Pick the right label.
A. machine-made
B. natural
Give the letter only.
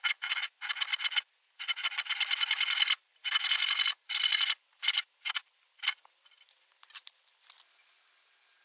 B